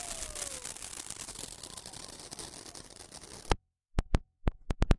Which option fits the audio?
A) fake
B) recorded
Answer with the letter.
B